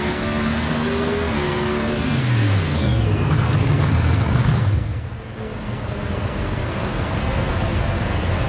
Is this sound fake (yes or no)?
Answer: yes